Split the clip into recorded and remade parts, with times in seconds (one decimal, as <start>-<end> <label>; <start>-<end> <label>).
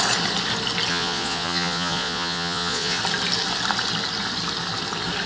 0.0-0.9 recorded; 0.9-3.0 remade; 3.0-5.3 recorded